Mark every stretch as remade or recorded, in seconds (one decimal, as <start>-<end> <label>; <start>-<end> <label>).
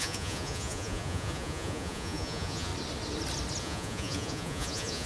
0.0-2.7 remade; 2.7-3.6 recorded; 3.6-5.1 remade